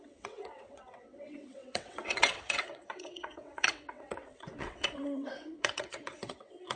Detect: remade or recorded remade